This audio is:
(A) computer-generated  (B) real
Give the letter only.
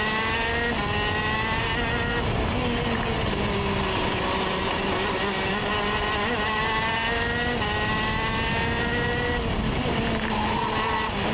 B